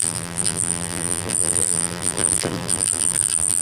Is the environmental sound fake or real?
fake